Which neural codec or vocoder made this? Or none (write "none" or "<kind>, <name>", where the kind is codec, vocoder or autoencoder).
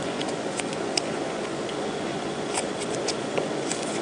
vocoder, Vocos